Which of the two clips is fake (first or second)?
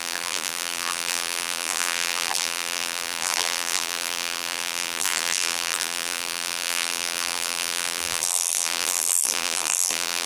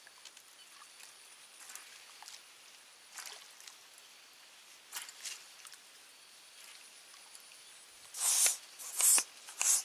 first